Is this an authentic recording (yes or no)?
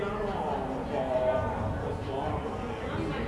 yes